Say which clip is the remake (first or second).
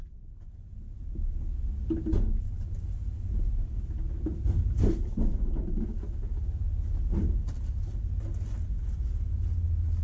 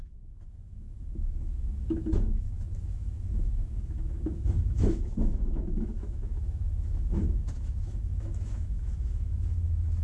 second